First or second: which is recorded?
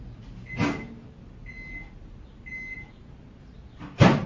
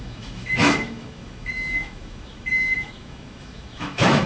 first